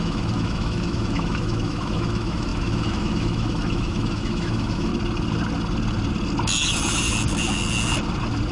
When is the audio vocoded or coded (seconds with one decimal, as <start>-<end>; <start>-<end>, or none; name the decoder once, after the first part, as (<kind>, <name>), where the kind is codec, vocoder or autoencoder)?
0.0-4.9 (autoencoder, DAC-VAE)